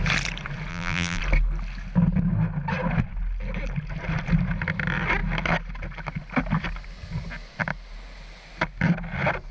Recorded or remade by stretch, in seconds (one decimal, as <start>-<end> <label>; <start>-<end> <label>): 0.0-0.7 recorded; 0.7-1.2 remade; 1.2-9.5 recorded